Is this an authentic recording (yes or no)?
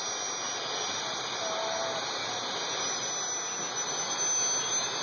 yes